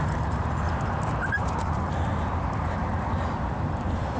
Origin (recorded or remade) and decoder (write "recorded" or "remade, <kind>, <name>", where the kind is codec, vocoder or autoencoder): remade, vocoder, BigVGAN v2